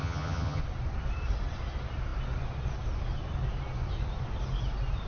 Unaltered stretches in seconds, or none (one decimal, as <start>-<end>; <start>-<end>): 0.6-5.1